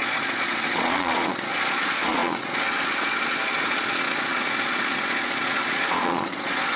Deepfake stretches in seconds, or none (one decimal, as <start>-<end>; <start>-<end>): 0.0-6.8